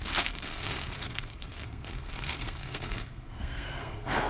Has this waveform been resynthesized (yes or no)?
yes